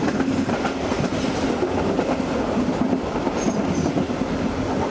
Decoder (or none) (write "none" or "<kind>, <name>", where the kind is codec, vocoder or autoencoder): none